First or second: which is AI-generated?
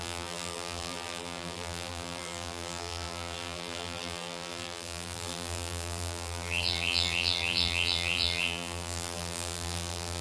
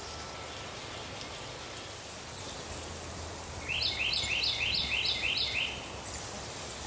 first